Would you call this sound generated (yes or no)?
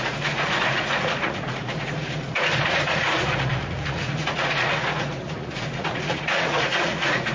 yes